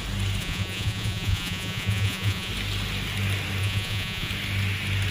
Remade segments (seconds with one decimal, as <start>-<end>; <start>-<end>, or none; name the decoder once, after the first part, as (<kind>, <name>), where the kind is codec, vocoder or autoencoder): 0.4-2.5 (vocoder, Vocos); 3.6-4.3